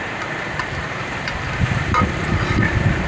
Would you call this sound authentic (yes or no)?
no